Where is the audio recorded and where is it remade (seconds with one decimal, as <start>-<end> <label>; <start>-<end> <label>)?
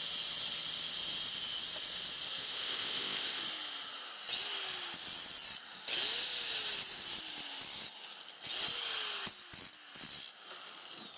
0.0-2.4 recorded; 2.4-3.4 remade; 3.4-11.2 recorded